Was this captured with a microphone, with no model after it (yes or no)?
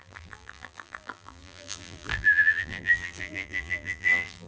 no